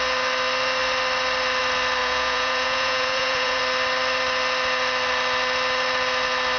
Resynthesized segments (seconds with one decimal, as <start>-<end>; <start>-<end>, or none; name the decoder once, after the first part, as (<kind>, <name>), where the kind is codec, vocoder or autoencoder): 2.0-3.6 (vocoder, Vocos)